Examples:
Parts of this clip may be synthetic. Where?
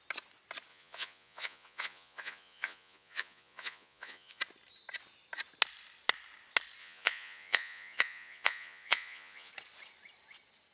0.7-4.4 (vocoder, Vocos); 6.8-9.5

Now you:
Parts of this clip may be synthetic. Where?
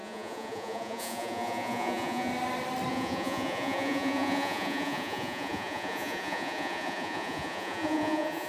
0.0-2.3 (vocoder, Vocos); 2.9-8.5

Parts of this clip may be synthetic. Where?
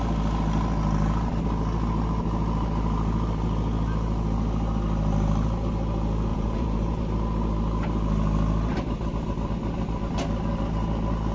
6.3-7.0 (vocoder, Vocos)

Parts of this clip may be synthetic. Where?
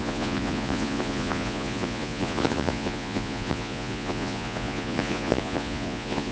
0.0-6.3 (vocoder, Vocos)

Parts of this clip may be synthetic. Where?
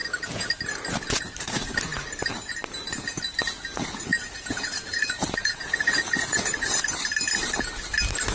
0.0-0.5 (vocoder, Vocos); 4.1-6.8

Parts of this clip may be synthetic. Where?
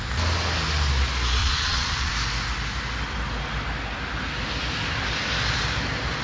1.4-2.1 (vocoder, Vocos)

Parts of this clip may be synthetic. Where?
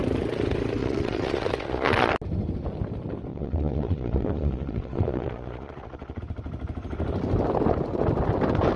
0.8-2.1 (vocoder, Vocos); 3.3-6.2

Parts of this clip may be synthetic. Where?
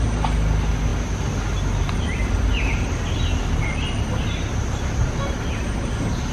none